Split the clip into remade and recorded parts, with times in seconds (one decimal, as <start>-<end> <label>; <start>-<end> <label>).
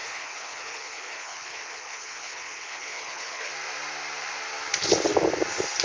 0.0-3.5 remade; 3.5-5.8 recorded